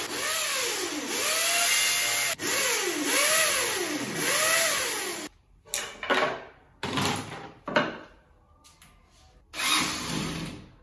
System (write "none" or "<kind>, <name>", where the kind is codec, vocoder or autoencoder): none